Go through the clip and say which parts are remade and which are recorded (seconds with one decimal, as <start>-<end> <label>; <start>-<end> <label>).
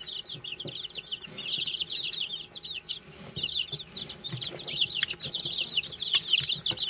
0.0-6.9 recorded